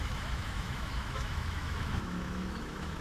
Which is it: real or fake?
fake